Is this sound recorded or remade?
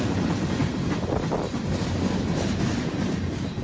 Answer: recorded